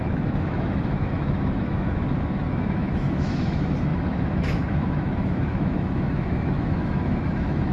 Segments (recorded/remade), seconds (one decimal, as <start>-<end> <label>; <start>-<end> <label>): 0.0-7.7 remade